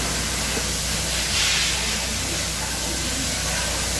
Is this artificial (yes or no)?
no